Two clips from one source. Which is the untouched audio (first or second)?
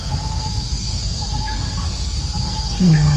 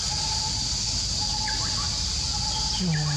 second